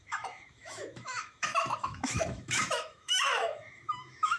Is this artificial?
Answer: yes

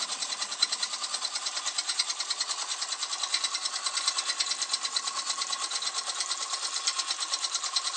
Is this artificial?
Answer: no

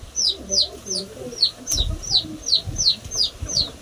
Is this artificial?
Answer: no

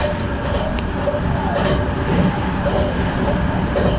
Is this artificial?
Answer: no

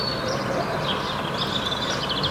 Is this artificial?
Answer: no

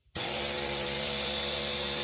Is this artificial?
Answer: yes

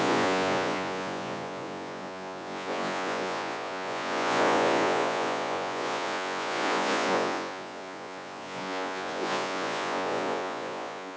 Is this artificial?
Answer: yes